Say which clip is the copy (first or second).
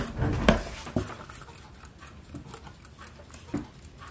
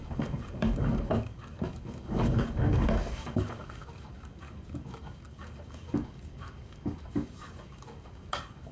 second